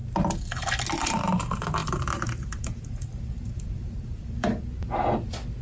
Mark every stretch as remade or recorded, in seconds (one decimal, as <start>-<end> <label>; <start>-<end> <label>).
0.0-1.8 recorded; 1.8-4.6 remade; 4.6-5.6 recorded

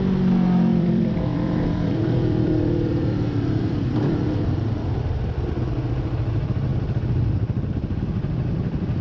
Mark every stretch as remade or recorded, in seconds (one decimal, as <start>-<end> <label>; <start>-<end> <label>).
0.0-0.7 recorded; 0.7-5.5 remade; 5.5-9.0 recorded

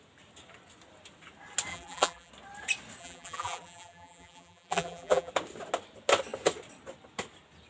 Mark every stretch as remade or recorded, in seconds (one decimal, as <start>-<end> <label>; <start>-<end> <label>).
0.0-1.7 recorded; 1.7-2.3 remade; 2.3-3.0 recorded; 3.0-5.3 remade; 5.3-7.7 recorded

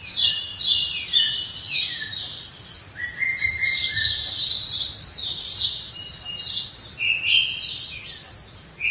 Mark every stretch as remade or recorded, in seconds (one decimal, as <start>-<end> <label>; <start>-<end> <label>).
0.0-3.3 recorded; 3.3-5.6 remade; 5.6-8.9 recorded